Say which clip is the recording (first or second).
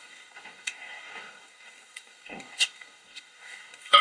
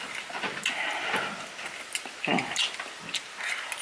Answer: second